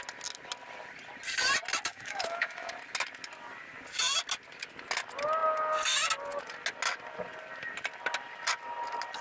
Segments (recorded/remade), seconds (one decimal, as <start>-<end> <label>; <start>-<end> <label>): 0.0-1.9 recorded; 1.9-2.7 remade; 2.7-9.2 recorded